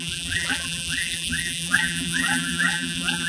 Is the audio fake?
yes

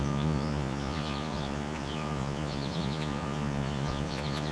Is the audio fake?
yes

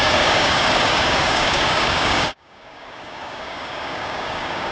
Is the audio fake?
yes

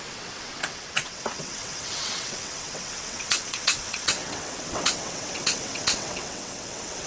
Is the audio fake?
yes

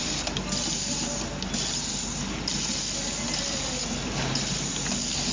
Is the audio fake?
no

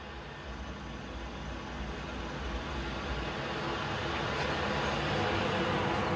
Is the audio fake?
no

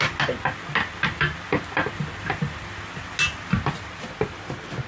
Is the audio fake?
no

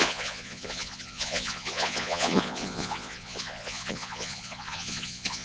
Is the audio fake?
yes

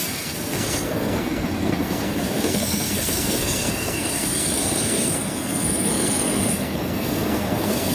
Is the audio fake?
yes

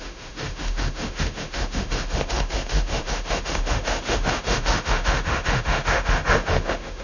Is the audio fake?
yes